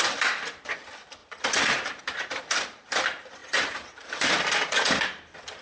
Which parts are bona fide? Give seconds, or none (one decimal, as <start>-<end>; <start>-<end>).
1.2-2.0